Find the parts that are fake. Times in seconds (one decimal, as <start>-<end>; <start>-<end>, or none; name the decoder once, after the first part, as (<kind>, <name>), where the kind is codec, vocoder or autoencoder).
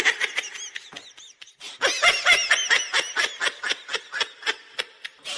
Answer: none